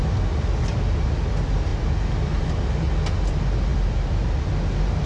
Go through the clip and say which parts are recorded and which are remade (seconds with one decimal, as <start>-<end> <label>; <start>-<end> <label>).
0.0-5.1 recorded